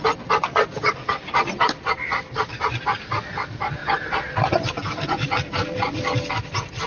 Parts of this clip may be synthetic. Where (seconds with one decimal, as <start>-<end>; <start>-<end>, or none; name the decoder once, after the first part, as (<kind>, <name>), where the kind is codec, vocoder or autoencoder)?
none